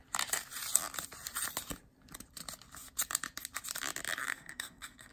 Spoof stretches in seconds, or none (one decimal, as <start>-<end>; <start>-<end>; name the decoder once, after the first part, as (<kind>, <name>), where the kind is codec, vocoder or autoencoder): 4.2-5.1 (codec, SNAC)